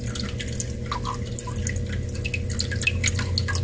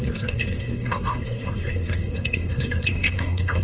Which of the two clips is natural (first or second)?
first